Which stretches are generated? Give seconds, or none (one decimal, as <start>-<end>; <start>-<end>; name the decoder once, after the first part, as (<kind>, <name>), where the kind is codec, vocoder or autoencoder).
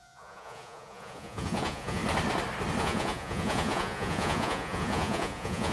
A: 0.0-2.0 (vocoder, Vocos); 2.8-5.7